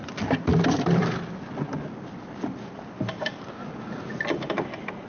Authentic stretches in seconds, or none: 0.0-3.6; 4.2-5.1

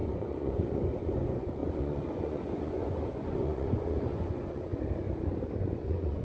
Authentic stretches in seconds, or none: 4.7-5.6

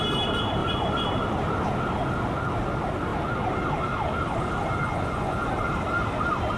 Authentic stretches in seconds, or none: 0.0-0.6; 1.1-4.7; 5.5-6.6

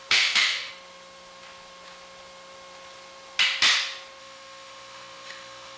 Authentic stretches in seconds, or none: 0.7-4.2